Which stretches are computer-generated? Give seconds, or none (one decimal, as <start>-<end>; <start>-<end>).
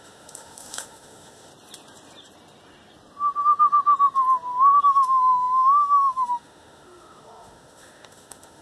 0.0-1.5; 4.8-8.6